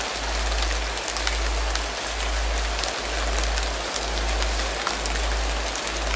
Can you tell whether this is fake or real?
real